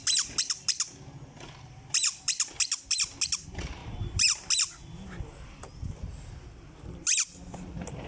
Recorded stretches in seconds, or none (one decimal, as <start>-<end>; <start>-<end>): 0.0-8.1